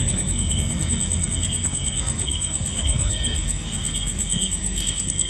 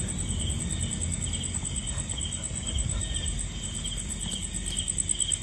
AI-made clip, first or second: first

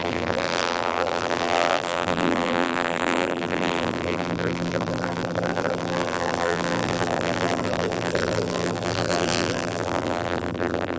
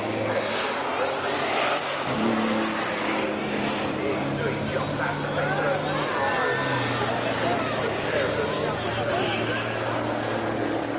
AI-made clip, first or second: first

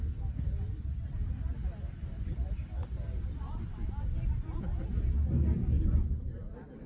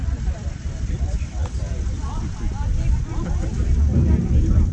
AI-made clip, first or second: second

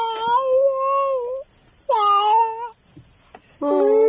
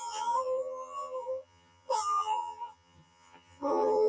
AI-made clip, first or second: second